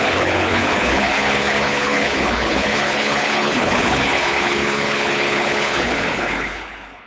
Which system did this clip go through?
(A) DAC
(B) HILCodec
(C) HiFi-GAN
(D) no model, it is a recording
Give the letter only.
B